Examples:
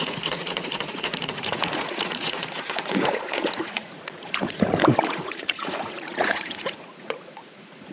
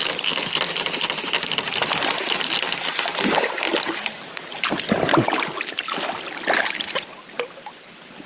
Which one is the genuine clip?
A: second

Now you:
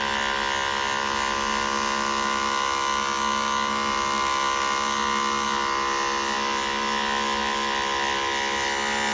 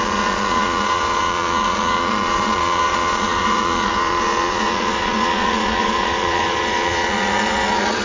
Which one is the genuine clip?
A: first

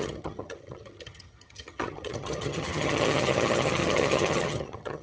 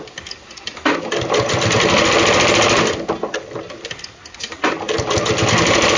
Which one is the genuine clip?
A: second